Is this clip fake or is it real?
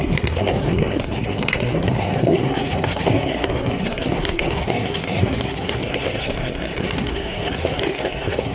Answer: fake